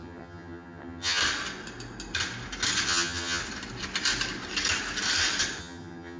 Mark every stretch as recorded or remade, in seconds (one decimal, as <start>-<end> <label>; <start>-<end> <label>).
0.0-1.2 remade; 1.2-2.9 recorded; 2.9-3.4 remade; 3.4-5.6 recorded; 5.6-6.2 remade